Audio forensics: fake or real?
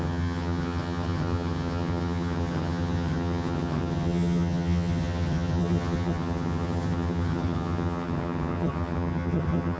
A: fake